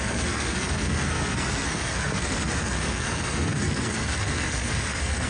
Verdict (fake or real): fake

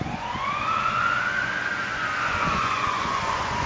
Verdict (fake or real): fake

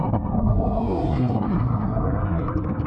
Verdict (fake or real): fake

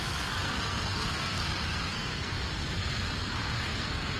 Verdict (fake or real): fake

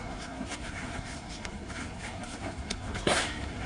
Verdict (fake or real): fake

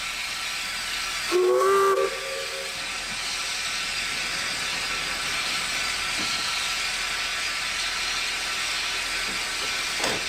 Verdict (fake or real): real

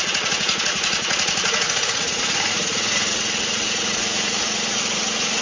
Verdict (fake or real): fake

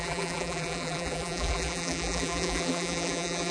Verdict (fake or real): fake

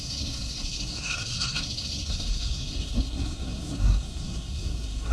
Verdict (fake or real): fake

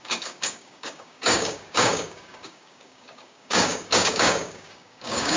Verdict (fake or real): fake